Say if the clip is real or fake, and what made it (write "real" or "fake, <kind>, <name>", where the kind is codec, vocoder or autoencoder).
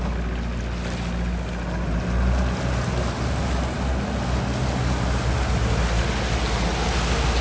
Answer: real